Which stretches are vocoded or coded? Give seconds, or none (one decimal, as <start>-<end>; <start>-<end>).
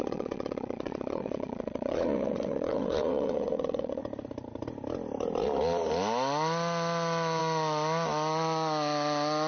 0.0-4.0